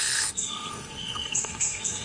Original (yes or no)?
no